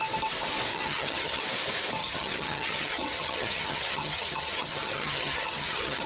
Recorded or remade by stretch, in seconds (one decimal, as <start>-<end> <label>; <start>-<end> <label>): 0.0-0.7 recorded; 0.7-1.4 remade; 1.4-2.0 recorded; 2.0-6.1 remade